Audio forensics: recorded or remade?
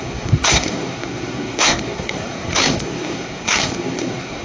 remade